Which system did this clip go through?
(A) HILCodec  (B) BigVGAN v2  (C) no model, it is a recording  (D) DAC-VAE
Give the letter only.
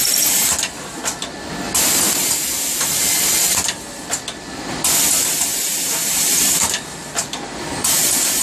C